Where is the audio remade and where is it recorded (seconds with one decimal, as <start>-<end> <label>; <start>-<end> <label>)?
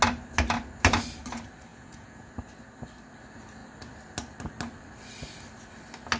0.0-1.7 recorded; 1.7-2.3 remade; 2.3-6.2 recorded